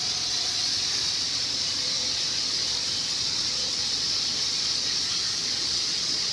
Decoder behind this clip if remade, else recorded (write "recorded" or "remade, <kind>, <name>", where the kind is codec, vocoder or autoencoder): remade, vocoder, Vocos